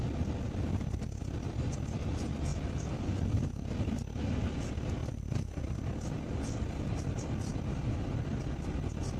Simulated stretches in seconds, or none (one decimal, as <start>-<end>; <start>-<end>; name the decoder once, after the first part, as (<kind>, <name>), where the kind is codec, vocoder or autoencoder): none